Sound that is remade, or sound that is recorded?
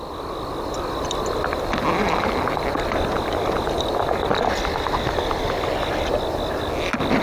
recorded